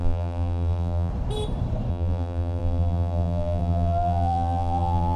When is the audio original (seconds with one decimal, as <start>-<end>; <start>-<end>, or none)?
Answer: 1.1-1.9